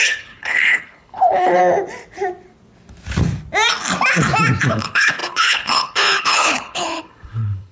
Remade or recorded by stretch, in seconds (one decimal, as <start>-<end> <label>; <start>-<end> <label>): 0.0-1.6 remade; 1.6-4.7 recorded; 4.7-7.7 remade